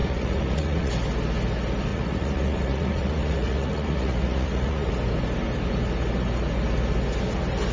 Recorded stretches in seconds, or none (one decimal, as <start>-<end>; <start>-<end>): 0.9-1.9; 4.9-7.7